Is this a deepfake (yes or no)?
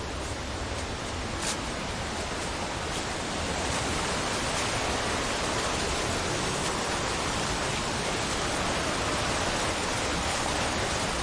no